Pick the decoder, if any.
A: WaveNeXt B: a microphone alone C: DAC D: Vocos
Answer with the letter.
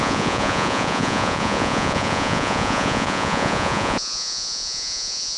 D